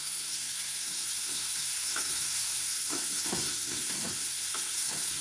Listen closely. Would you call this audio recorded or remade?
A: remade